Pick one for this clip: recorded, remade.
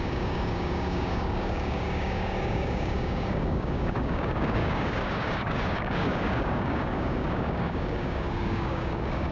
remade